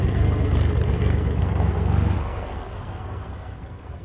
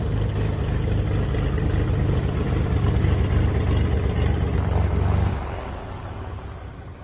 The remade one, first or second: first